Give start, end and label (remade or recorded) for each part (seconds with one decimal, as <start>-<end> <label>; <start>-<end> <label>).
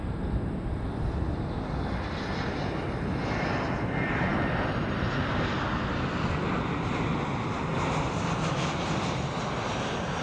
0.0-10.2 recorded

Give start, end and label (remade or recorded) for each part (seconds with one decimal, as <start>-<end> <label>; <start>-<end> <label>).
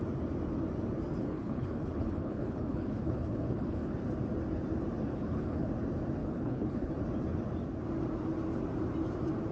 0.0-1.2 recorded; 1.2-3.9 remade; 3.9-5.1 recorded; 5.1-5.7 remade; 5.7-6.2 recorded; 6.2-6.9 remade; 6.9-9.5 recorded